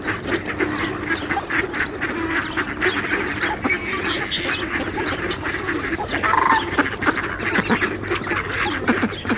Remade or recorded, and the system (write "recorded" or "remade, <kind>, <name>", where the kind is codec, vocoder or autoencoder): recorded